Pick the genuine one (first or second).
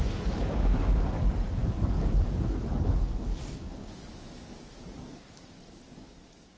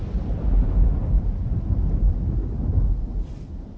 second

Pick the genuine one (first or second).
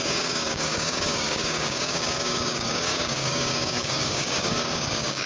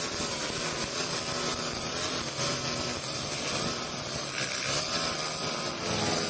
second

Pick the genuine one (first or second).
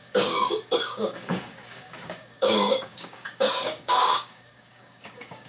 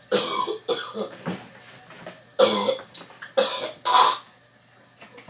second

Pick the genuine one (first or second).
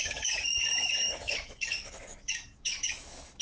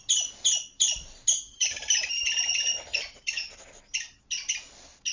second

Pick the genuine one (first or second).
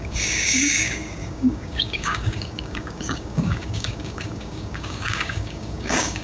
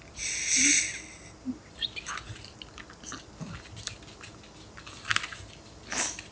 second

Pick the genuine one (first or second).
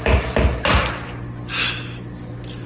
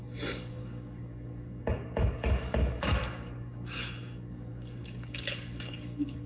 first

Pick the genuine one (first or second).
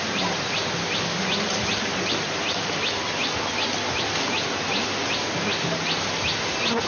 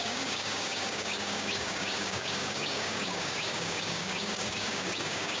first